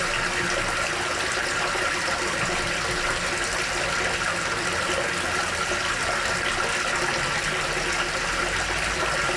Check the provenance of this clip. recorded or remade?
recorded